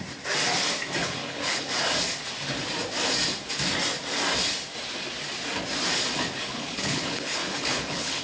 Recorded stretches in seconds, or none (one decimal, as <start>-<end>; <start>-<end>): 0.0-1.0; 1.7-6.5